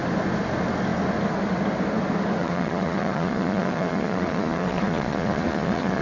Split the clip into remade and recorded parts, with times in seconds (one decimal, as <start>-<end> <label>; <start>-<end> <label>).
0.0-2.4 recorded; 2.4-6.0 remade